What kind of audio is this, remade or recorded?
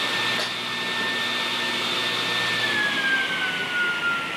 recorded